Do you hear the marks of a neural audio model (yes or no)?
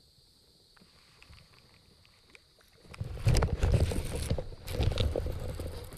no